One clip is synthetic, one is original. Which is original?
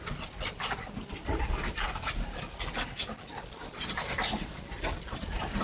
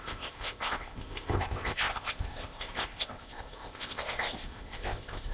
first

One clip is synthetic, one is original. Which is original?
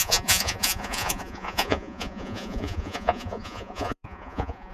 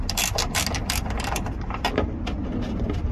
second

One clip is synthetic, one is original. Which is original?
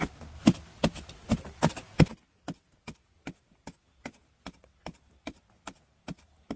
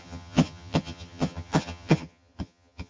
first